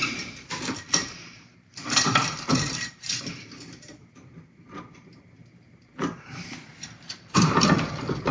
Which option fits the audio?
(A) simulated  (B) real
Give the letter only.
A